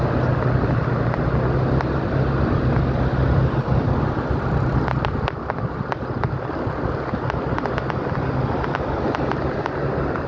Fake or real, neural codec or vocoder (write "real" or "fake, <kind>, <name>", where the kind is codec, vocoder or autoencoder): real